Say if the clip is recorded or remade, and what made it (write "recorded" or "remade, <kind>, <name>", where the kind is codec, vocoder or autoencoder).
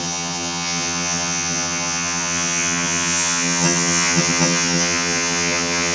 remade, vocoder, HiFi-GAN